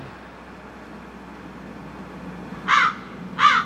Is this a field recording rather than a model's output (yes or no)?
yes